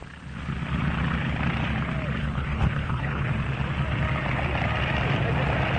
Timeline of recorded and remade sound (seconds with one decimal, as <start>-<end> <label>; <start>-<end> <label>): 0.0-2.2 recorded; 2.2-3.3 remade; 3.3-5.8 recorded